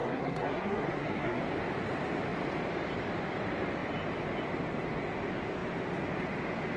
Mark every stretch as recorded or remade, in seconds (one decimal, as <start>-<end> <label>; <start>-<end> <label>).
0.0-1.4 remade; 1.4-6.8 recorded